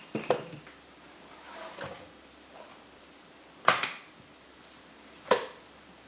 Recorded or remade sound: recorded